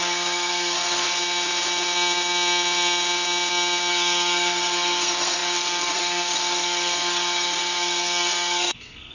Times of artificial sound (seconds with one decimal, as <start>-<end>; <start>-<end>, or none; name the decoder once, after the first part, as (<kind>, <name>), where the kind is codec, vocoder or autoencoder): 0.0-1.0 (codec, SNAC); 3.9-9.1